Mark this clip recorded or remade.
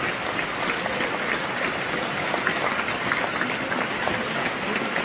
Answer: recorded